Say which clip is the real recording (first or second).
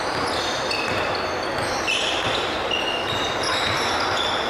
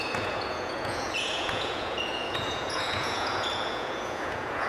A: first